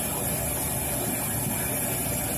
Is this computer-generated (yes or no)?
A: no